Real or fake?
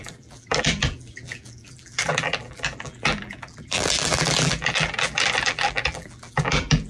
fake